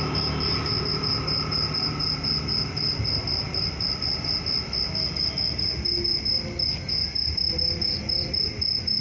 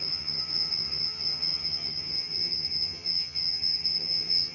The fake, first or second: second